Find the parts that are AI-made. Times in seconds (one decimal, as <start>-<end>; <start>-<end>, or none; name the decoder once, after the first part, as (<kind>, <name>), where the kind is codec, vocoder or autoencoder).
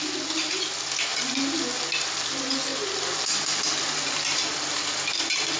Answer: none